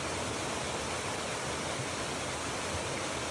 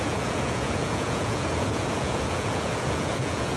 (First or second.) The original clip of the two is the first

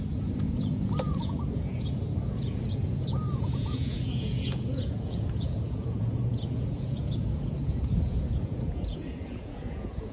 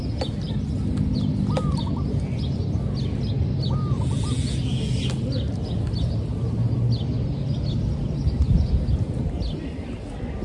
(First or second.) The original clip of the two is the second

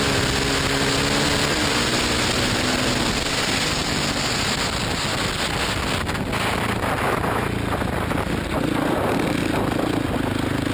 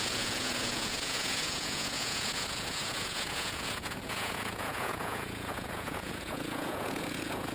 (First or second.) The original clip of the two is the first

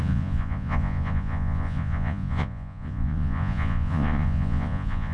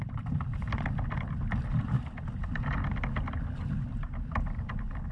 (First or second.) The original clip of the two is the second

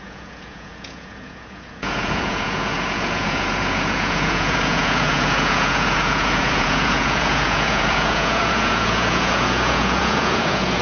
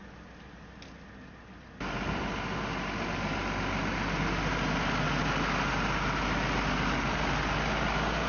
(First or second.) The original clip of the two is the second